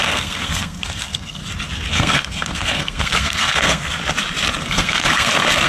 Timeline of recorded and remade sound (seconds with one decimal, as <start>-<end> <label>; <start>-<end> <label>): 0.0-1.4 remade; 1.4-1.9 recorded; 1.9-4.0 remade; 4.0-4.6 recorded; 4.6-5.7 remade